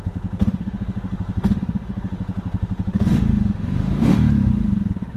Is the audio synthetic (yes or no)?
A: yes